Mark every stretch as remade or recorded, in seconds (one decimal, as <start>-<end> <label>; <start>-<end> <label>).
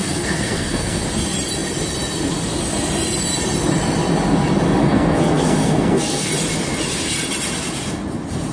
0.0-1.0 remade; 1.0-4.8 recorded; 4.8-6.3 remade; 6.3-8.5 recorded